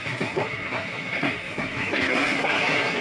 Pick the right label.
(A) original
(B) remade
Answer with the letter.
B